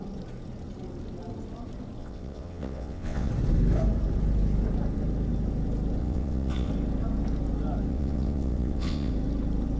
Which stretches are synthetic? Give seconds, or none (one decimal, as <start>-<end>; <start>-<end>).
2.0-3.3; 6.0-6.7; 7.9-9.1